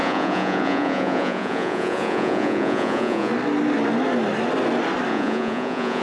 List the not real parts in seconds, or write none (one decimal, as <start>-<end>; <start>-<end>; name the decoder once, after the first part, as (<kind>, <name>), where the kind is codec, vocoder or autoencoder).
0.0-3.3 (vocoder, Vocos); 5.1-6.0